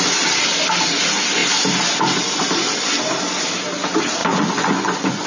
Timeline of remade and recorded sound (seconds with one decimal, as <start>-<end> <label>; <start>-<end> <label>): 0.0-4.2 recorded; 4.2-5.3 remade